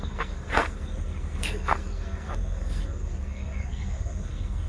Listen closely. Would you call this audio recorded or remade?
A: remade